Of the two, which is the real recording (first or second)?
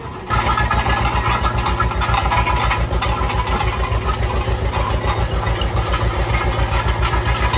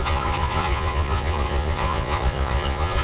first